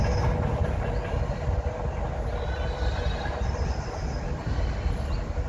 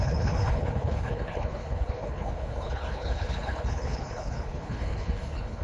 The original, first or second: first